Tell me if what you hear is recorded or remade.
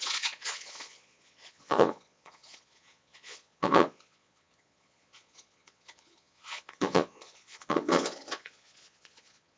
remade